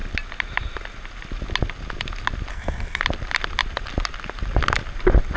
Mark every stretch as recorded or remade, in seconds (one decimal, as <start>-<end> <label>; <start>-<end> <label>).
0.0-2.5 recorded; 2.5-3.0 remade; 3.0-5.4 recorded